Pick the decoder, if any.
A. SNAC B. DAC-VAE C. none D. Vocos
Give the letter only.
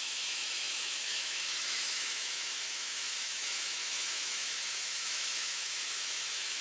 B